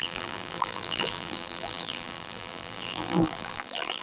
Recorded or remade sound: remade